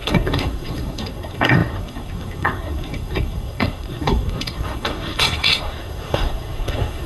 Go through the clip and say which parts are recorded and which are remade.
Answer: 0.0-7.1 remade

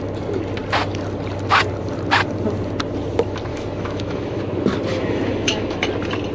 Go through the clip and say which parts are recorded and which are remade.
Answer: 0.0-3.5 recorded; 3.5-4.4 remade; 4.4-4.9 recorded; 4.9-5.8 remade; 5.8-6.3 recorded